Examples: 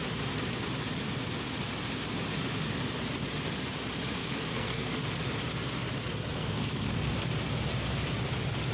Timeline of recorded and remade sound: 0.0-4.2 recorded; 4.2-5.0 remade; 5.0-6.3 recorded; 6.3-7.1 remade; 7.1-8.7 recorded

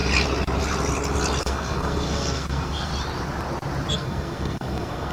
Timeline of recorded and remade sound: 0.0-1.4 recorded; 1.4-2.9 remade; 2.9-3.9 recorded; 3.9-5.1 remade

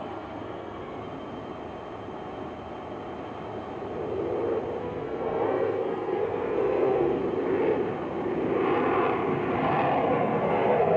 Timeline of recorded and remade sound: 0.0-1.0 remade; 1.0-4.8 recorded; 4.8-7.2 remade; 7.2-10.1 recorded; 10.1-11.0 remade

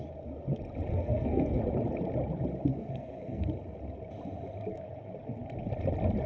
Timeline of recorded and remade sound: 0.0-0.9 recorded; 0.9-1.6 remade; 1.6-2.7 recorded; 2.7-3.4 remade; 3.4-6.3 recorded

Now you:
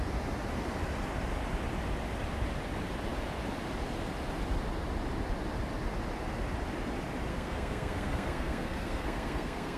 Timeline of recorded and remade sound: 0.0-7.3 recorded; 7.3-9.8 remade

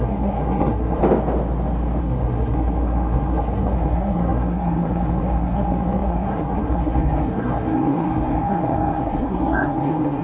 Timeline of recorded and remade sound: 0.0-1.0 remade; 1.0-2.0 recorded; 2.0-10.2 remade

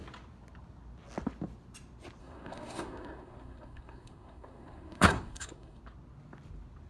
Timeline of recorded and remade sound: 0.0-2.2 recorded; 2.2-5.8 remade; 5.8-6.9 recorded